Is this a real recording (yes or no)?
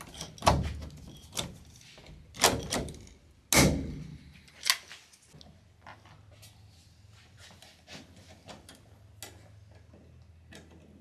yes